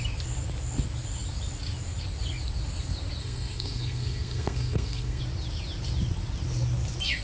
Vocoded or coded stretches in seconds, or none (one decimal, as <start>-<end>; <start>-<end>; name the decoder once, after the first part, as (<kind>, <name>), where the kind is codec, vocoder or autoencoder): 3.2-5.2 (codec, SNAC)

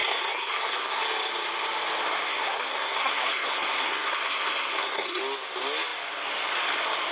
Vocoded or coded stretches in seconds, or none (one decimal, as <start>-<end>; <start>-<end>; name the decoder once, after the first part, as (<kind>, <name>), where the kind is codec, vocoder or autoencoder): 0.0-1.0 (codec, SNAC); 2.3-5.2

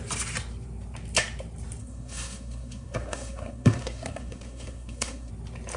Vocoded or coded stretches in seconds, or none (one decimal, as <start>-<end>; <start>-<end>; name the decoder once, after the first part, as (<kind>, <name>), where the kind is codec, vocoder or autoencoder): 1.8-5.3 (codec, SNAC)

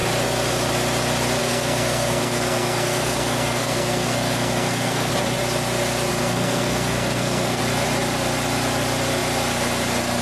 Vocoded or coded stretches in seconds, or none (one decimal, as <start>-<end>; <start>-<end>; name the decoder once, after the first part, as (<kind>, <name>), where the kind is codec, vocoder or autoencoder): 1.4-5.1 (codec, SNAC); 6.1-7.6

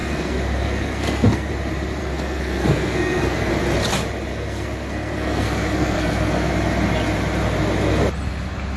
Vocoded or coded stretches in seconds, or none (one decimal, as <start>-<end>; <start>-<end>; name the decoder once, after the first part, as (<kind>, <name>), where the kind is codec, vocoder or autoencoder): 0.0-1.5 (codec, SNAC); 2.0-3.5; 4.3-6.5

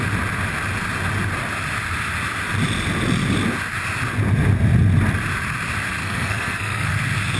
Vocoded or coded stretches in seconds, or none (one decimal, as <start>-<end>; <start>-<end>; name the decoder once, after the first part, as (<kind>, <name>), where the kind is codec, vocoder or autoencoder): 6.0-7.0 (codec, SNAC)

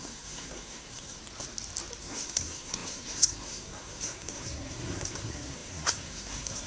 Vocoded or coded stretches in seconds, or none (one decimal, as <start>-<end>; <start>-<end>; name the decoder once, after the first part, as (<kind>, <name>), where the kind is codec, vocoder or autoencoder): 0.0-1.2 (codec, SNAC); 2.0-6.7

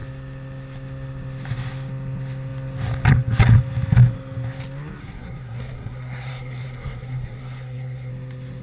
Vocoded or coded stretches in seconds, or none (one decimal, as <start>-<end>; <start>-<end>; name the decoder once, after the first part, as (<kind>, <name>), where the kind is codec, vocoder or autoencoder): 5.0-8.1 (codec, SNAC)